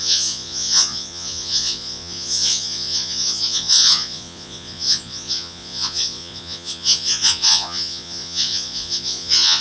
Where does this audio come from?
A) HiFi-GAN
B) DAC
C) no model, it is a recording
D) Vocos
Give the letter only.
D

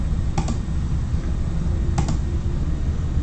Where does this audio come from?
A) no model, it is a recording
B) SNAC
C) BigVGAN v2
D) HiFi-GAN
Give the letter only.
A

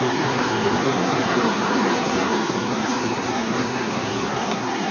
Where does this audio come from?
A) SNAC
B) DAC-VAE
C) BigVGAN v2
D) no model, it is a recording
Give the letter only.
A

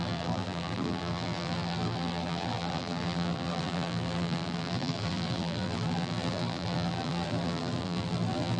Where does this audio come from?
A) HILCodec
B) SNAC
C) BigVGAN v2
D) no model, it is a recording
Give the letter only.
C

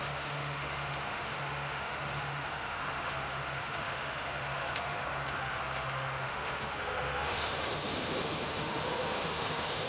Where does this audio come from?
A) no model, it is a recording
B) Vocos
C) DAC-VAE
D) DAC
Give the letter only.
C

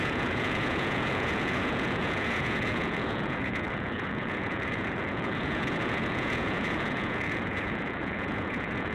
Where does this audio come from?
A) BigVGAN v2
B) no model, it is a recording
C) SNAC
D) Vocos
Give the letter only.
D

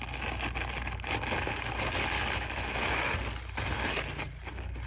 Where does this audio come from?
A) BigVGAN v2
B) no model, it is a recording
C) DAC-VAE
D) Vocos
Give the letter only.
B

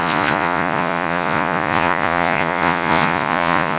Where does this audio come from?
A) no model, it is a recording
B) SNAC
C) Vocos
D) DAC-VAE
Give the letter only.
C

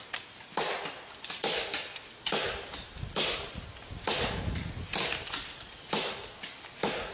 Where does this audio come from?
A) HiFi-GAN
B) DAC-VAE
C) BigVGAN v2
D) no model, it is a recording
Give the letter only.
D